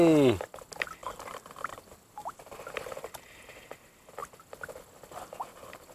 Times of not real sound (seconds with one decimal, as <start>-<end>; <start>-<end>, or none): 1.0-1.8